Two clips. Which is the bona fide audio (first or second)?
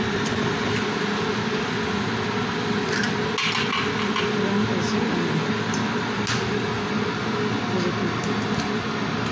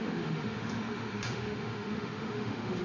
first